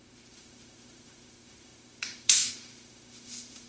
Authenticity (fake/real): fake